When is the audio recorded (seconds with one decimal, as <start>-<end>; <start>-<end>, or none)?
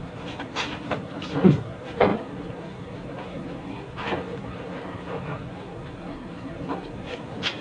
none